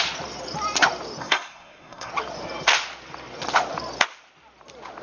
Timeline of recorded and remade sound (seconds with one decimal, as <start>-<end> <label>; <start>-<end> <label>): 0.0-1.2 recorded; 1.2-2.1 remade; 2.1-5.0 recorded